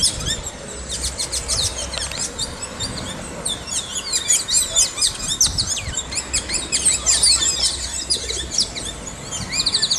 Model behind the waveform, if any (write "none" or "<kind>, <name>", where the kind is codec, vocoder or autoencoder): none